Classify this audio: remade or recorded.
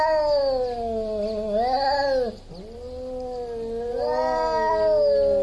recorded